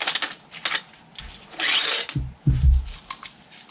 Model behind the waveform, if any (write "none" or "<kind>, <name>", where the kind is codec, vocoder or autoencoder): none